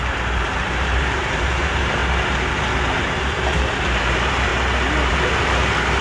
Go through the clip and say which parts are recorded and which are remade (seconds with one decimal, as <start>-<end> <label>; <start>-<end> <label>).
0.0-2.0 remade; 2.0-3.0 recorded; 3.0-4.5 remade; 4.5-5.1 recorded; 5.1-6.0 remade